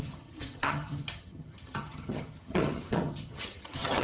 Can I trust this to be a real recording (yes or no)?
no